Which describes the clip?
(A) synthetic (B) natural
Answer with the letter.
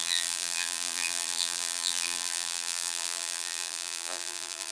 A